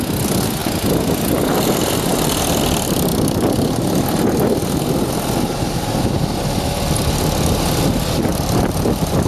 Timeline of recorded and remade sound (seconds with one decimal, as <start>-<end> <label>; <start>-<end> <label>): 0.0-8.3 recorded; 8.3-8.8 remade; 8.8-9.3 recorded